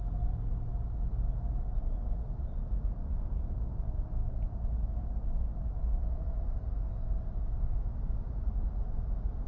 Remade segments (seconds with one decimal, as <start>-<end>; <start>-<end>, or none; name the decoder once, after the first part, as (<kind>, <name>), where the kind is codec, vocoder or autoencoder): none